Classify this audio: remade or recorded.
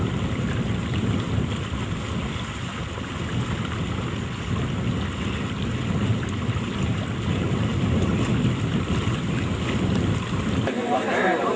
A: recorded